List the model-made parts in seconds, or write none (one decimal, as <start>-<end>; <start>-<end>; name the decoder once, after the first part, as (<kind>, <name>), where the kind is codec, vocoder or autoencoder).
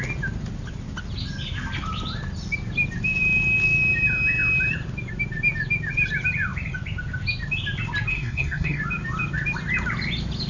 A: 8.1-8.8 (codec, SNAC)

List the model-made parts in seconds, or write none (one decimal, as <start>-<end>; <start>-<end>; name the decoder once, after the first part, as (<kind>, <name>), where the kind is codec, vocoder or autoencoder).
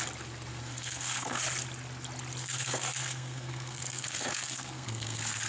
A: 0.5-1.4 (codec, SNAC); 2.4-5.5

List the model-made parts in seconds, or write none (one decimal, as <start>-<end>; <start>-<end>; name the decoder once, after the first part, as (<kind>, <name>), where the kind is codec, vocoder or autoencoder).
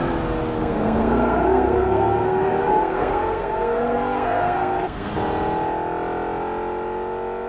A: 0.6-5.1 (codec, SNAC)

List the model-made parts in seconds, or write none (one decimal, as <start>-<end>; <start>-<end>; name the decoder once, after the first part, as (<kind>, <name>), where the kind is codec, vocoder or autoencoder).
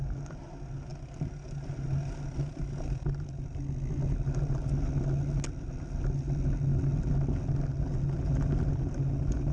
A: none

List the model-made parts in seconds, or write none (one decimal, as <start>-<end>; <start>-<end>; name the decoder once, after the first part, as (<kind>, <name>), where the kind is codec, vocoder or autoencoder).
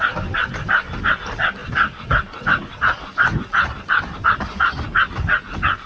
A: none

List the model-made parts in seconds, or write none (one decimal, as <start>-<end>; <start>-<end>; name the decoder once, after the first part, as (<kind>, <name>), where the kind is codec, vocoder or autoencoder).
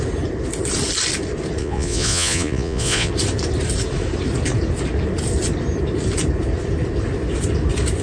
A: 1.6-3.1 (vocoder, Vocos)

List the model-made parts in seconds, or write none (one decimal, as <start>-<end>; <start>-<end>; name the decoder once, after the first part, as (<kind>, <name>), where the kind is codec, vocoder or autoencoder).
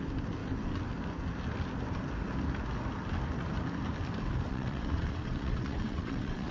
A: 4.5-6.5 (vocoder, WaveNeXt)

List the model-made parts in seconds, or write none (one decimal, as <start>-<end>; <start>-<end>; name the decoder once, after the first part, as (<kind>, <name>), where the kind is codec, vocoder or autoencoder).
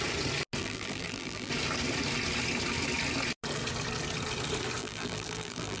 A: 0.6-1.5 (vocoder, BigVGAN v2); 4.8-5.8